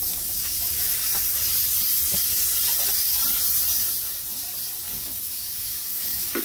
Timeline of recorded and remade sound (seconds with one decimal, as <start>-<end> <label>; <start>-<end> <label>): 0.0-1.1 remade; 1.1-4.8 recorded; 4.8-6.4 remade